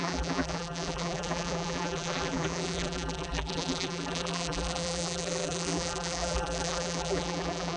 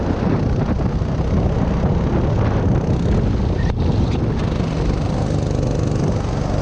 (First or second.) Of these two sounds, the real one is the second